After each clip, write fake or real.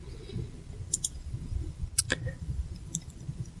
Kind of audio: real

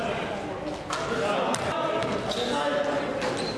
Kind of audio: real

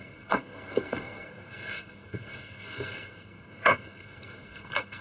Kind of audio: fake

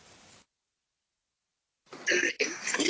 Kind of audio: real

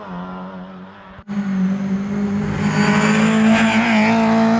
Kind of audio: real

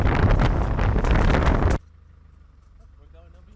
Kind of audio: real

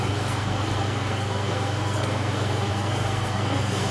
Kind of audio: fake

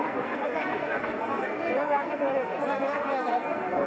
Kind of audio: fake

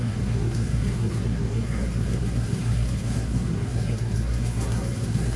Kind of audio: fake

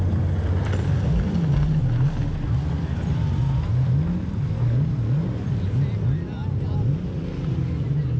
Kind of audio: real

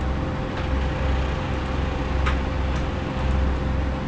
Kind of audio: real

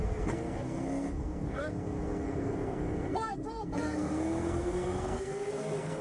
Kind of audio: fake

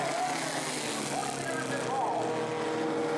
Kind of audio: real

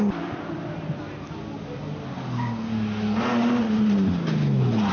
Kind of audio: real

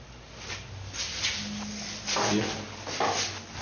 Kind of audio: real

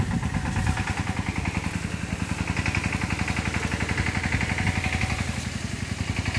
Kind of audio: real